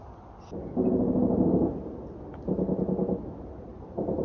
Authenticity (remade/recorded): recorded